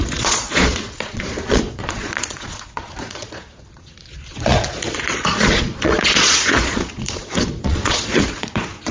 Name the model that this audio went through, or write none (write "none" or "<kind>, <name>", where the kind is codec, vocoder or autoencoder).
vocoder, Vocos